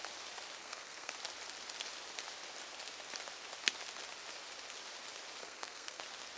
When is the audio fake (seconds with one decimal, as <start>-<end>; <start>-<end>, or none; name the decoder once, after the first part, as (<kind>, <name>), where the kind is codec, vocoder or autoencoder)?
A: 0.6-1.1 (codec, SNAC); 5.4-6.0